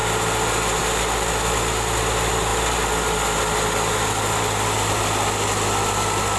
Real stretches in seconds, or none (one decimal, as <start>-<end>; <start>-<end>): 0.0-6.4

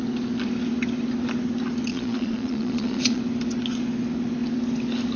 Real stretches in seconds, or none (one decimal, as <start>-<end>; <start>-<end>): 0.0-1.9; 3.2-5.2

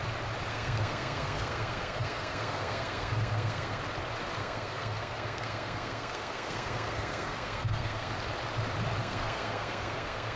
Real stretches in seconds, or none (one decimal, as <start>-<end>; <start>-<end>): 0.0-0.5; 3.8-4.4; 8.1-9.0

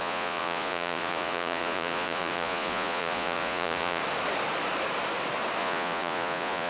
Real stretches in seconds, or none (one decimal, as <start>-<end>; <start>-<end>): 4.0-5.6

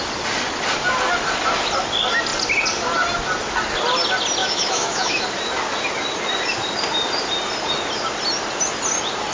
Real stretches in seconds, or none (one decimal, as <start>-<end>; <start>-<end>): 0.0-4.4; 5.2-9.3

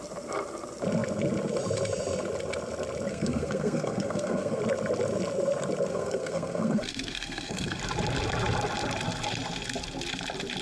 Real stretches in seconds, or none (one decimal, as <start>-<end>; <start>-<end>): 0.0-3.1; 4.6-5.9; 7.8-10.6

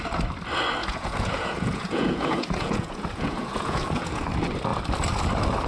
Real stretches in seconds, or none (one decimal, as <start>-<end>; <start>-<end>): 0.0-0.8; 4.2-5.7